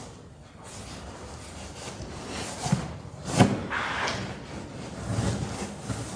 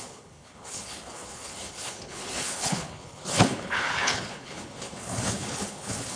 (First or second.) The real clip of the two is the first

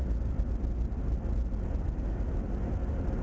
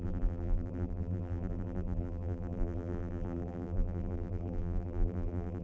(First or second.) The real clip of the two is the first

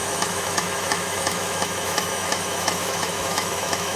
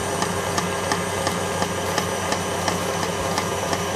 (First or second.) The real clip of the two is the second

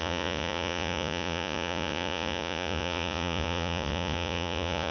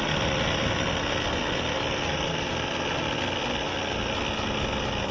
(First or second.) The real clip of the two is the second